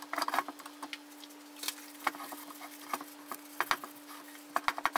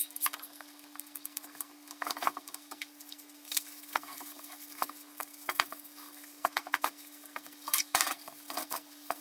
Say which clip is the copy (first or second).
second